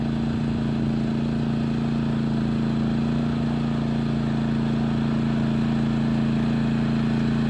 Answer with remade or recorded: recorded